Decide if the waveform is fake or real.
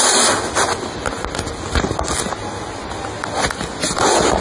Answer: real